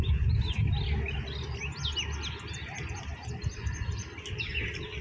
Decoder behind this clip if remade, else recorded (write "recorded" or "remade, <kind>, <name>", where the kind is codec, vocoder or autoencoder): recorded